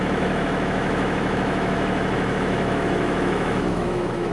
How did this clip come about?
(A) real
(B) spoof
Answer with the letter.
B